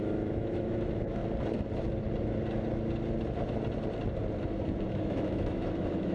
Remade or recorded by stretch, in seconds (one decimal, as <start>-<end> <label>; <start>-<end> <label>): 0.0-1.2 remade; 1.2-4.9 recorded; 4.9-6.1 remade